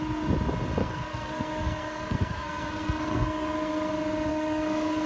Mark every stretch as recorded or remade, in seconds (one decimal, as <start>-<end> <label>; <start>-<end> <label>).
0.0-0.8 recorded; 0.8-3.9 remade; 3.9-4.3 recorded; 4.3-5.1 remade